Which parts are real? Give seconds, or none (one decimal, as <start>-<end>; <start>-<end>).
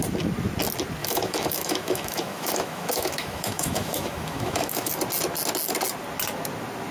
0.0-1.0; 4.9-6.9